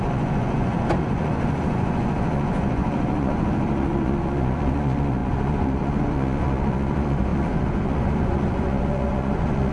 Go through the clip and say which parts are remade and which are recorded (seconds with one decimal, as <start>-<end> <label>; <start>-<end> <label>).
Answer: 0.0-9.7 remade